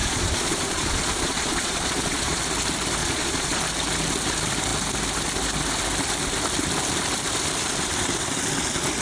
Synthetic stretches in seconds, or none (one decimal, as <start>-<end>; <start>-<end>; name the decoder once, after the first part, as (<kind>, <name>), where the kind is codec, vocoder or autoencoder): 0.0-2.4 (vocoder, Vocos); 3.0-3.6